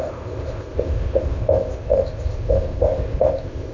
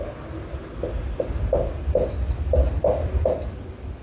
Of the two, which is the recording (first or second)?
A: second